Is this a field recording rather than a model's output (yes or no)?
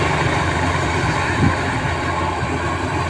no